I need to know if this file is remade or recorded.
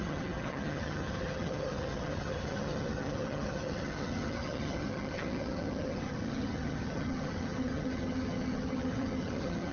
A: remade